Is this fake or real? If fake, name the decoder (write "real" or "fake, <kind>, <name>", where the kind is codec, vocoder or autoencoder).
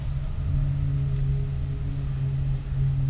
real